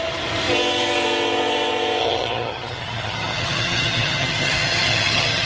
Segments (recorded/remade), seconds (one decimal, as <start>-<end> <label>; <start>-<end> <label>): 0.0-2.0 recorded; 2.0-5.5 remade